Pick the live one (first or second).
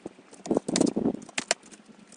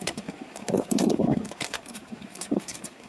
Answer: first